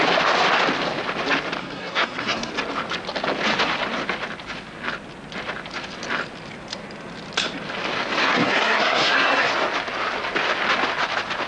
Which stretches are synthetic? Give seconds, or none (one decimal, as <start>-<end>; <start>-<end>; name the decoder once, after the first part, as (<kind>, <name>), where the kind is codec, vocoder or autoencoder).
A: 1.6-2.5 (codec, SNAC); 8.2-9.5